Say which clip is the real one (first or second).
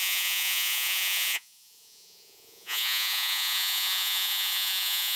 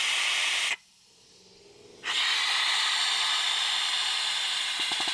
second